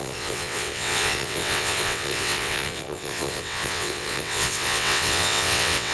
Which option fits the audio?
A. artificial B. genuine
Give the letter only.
A